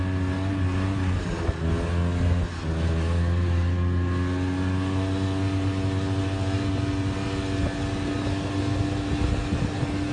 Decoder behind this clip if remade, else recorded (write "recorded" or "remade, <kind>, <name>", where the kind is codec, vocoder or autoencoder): recorded